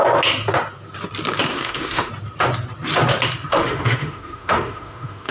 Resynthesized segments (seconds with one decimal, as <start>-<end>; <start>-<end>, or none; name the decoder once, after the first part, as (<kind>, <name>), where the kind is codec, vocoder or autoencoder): 1.5-2.1 (autoencoder, DAC-VAE); 3.5-5.3